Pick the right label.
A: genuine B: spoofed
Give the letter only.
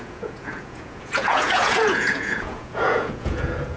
B